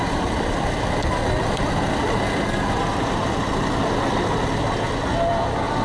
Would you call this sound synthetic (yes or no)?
yes